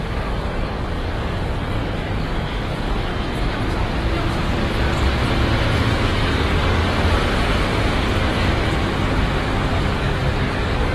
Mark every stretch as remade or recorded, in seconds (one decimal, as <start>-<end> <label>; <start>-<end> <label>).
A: 0.0-3.1 remade; 3.1-5.7 recorded; 5.7-6.8 remade; 6.8-9.8 recorded; 9.8-10.9 remade